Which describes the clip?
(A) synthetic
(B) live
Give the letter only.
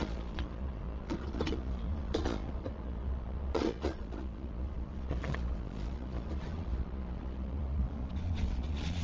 A